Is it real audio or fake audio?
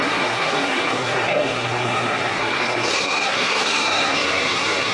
fake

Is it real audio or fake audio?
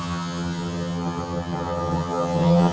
fake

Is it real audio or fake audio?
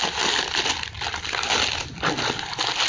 real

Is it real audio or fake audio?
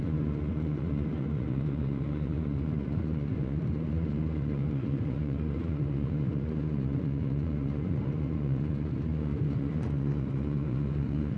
fake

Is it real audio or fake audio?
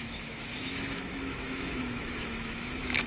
fake